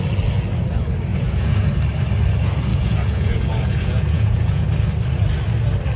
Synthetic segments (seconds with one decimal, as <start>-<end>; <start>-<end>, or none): 1.1-1.7; 2.7-4.6